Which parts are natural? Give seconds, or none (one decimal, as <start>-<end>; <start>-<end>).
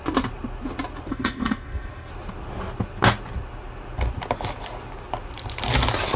0.0-1.1; 2.1-6.2